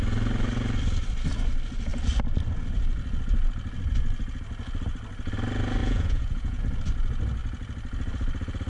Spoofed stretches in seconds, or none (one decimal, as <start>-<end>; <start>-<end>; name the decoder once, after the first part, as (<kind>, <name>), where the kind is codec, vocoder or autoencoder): 5.8-6.6 (vocoder, Vocos)